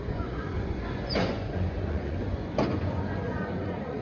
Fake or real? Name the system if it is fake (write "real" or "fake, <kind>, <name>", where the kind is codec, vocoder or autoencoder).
fake, vocoder, Vocos